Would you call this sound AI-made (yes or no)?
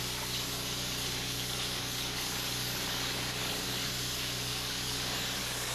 yes